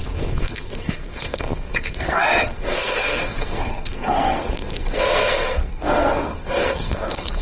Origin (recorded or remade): remade